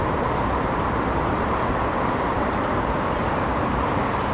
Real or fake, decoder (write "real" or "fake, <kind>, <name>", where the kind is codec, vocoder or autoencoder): fake, vocoder, BigVGAN v2